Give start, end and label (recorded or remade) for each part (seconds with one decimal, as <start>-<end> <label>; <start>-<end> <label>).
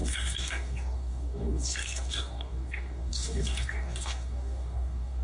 0.0-5.2 remade